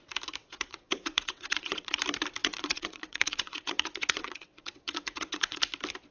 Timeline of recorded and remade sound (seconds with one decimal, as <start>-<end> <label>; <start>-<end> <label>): 0.0-0.4 recorded; 0.4-2.0 remade; 2.0-2.4 recorded; 2.4-5.6 remade; 5.6-6.1 recorded